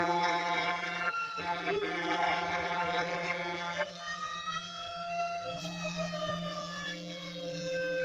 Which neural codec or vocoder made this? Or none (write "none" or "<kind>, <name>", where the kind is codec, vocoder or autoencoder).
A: vocoder, BigVGAN v2